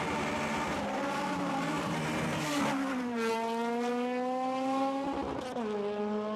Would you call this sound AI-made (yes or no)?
no